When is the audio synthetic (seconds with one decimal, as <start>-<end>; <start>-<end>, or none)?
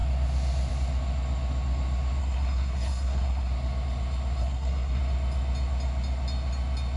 2.2-3.5; 4.4-5.0